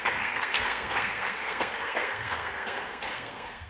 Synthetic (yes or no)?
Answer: yes